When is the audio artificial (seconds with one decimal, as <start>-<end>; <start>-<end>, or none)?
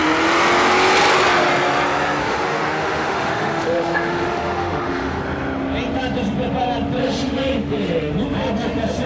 2.2-5.2; 7.0-8.1